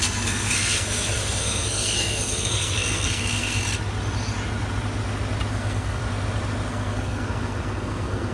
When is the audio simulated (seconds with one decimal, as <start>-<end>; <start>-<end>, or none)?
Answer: 0.0-3.6; 5.5-6.0; 6.7-8.3

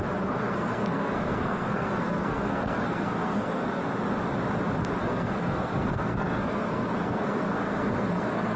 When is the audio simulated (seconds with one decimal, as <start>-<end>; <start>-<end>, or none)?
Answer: 0.0-3.8; 5.0-8.6

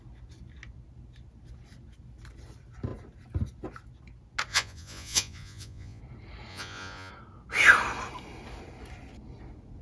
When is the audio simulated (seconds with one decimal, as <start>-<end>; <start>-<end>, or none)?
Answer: 4.5-6.0; 6.5-7.1

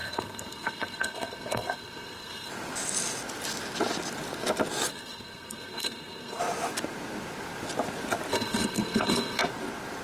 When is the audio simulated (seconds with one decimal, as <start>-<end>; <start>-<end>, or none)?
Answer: 0.0-2.5; 4.9-6.4; 8.3-9.4